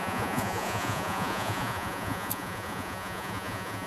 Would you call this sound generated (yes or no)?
yes